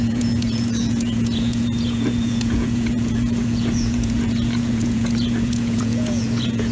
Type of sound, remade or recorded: remade